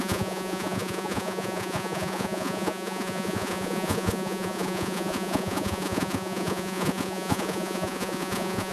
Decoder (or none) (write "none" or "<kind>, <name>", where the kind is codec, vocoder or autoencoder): vocoder, Vocos